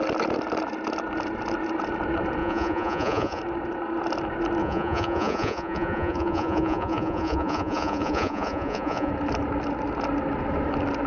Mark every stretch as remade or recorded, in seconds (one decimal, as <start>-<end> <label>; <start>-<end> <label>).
0.0-2.4 recorded; 2.4-3.4 remade; 3.4-4.6 recorded; 4.6-9.1 remade; 9.1-11.1 recorded